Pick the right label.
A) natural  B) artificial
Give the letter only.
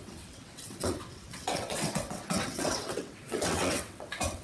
B